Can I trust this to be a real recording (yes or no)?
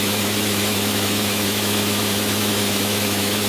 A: no